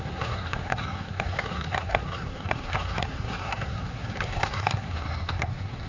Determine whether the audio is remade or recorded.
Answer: remade